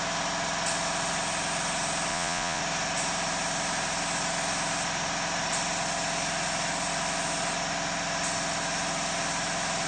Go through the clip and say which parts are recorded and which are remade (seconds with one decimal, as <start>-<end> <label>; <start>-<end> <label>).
0.0-2.1 recorded; 2.1-2.6 remade; 2.6-9.9 recorded